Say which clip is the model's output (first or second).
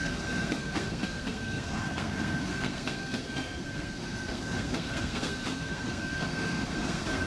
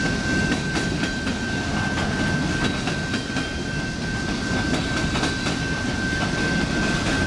first